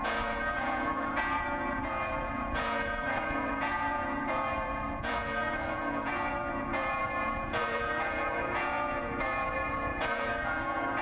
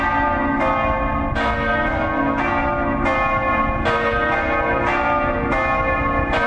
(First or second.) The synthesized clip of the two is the first